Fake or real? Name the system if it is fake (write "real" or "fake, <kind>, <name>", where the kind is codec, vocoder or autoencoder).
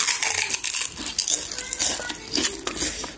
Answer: real